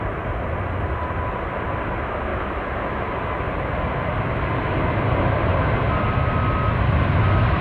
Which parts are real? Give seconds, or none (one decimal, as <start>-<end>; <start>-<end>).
0.0-7.6